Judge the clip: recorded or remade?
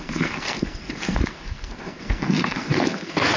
remade